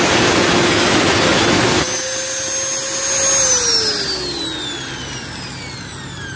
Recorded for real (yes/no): yes